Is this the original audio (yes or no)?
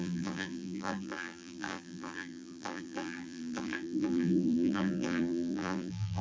no